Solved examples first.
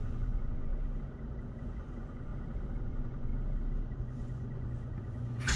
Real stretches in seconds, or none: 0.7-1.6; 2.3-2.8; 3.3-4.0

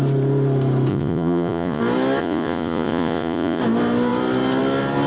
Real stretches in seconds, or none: 0.0-0.9; 1.8-2.2; 3.6-5.1

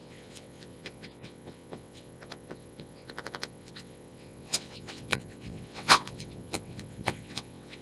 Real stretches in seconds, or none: none